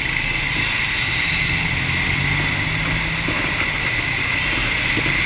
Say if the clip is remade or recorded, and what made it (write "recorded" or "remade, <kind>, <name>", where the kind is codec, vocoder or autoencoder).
recorded